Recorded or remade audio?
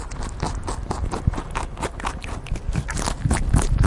recorded